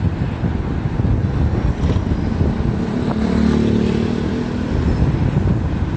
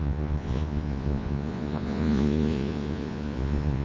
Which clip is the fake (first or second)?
second